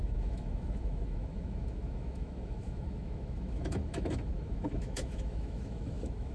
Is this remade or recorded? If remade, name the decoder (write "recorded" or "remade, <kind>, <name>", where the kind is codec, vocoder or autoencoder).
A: remade, autoencoder, DAC-VAE